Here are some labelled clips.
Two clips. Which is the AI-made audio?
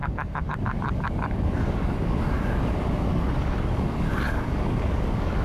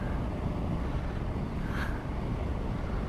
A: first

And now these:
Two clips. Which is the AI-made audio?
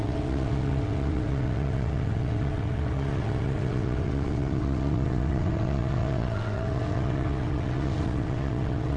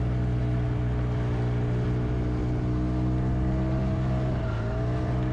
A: first